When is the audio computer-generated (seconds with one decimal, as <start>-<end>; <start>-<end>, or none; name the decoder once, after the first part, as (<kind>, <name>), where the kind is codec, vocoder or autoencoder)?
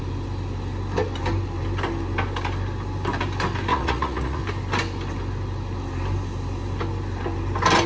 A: 3.7-4.4 (vocoder, Vocos)